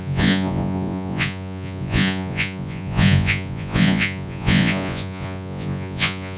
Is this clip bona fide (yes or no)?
no